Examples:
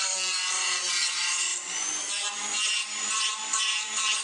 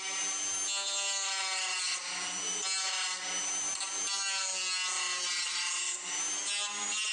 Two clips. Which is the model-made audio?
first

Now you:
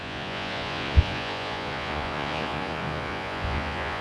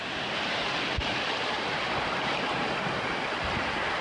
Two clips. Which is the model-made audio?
first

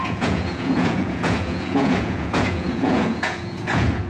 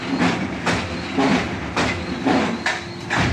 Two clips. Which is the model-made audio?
first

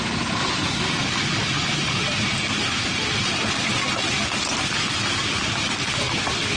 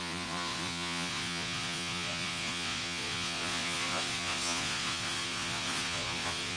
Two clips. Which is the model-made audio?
second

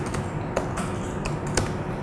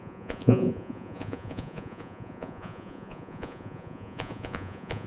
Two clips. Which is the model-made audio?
second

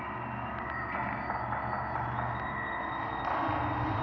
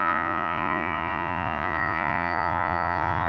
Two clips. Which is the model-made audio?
second